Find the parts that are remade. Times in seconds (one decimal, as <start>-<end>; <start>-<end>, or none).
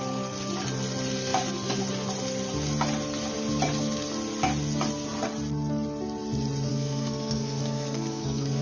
6.7-8.6